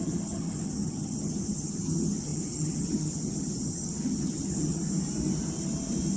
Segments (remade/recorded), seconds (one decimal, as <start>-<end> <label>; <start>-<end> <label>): 0.0-4.8 remade; 4.8-6.2 recorded